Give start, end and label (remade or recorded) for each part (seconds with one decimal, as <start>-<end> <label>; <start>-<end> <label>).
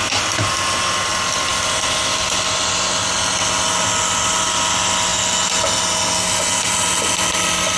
0.0-7.8 recorded